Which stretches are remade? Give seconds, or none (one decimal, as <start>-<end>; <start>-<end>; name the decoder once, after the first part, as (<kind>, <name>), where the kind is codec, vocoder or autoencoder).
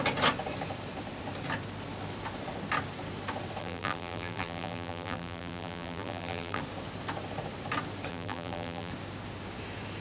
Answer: 3.6-6.6 (vocoder, BigVGAN v2); 8.1-8.9